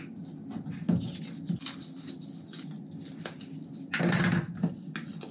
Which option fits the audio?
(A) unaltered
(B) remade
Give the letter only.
A